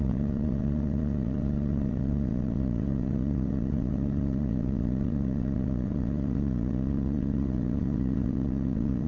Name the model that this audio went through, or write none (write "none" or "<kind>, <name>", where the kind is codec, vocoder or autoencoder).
vocoder, WaveNeXt